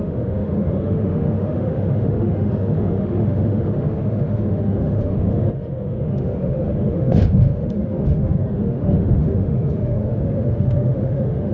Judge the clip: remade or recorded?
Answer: remade